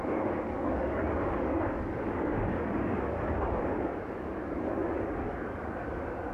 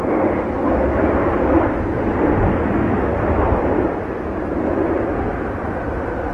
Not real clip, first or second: first